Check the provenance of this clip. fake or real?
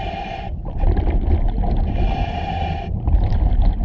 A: real